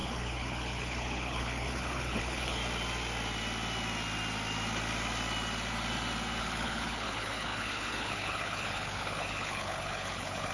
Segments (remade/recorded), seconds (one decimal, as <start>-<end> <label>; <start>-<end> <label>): 0.0-2.6 remade; 2.6-6.4 recorded; 6.4-10.5 remade

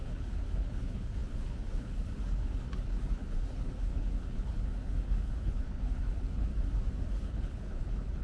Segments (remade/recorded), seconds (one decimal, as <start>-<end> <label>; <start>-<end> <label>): 0.0-6.5 remade; 6.5-7.1 recorded; 7.1-8.2 remade

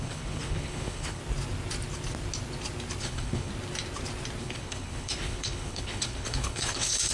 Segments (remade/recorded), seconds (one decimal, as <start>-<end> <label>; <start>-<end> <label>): 0.0-1.2 remade; 1.2-3.0 recorded; 3.0-3.5 remade; 3.5-4.4 recorded; 4.4-7.1 remade

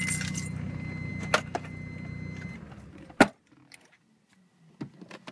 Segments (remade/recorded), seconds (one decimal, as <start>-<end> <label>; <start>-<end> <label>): 0.0-5.3 recorded

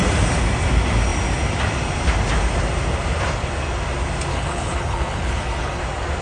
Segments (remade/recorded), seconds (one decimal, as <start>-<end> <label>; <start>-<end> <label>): 0.0-4.3 recorded; 4.3-5.8 remade; 5.8-6.2 recorded

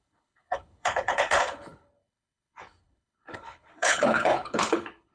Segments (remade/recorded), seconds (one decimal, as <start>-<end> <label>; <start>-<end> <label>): 0.0-5.1 remade